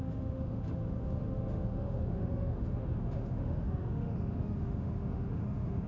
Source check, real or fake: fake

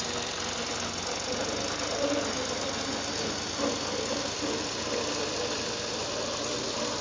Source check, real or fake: real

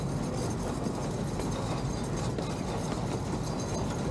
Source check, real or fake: real